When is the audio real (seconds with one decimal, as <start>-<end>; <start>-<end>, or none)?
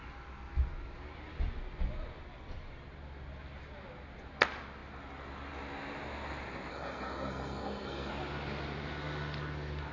0.0-6.7; 8.1-9.9